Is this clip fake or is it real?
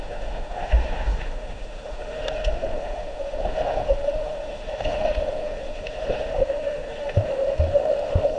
fake